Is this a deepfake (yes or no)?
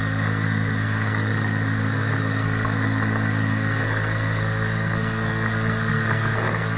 yes